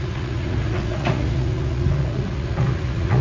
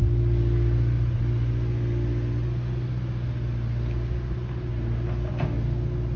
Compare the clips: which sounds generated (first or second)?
first